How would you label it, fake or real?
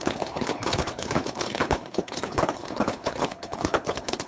fake